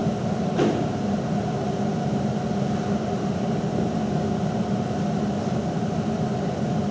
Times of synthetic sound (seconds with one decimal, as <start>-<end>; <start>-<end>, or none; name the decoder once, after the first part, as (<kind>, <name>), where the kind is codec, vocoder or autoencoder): none